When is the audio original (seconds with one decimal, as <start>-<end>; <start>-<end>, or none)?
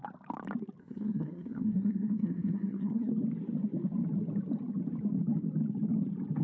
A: 0.0-0.8; 3.1-6.4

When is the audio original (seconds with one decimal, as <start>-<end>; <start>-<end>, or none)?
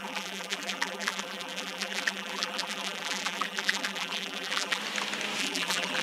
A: 4.8-5.4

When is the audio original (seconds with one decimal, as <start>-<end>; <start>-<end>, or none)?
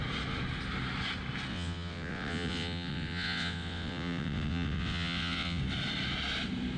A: 0.0-1.5; 5.6-6.8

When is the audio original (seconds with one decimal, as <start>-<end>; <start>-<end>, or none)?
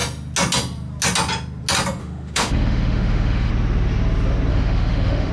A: 0.0-2.0; 3.5-4.5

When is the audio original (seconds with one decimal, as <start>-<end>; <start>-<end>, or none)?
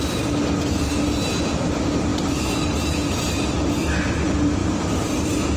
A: 0.0-2.1; 2.9-4.6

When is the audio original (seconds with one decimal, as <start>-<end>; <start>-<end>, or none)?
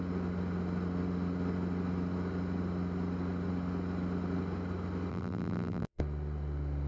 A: 0.0-5.1; 6.0-6.9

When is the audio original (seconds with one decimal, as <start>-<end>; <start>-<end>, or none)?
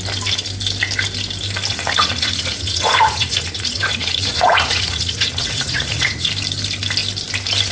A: 0.0-1.7; 6.3-7.7